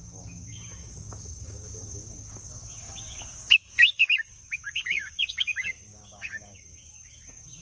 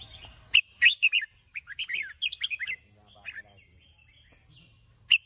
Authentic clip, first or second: second